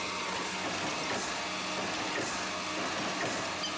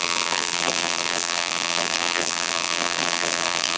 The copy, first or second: second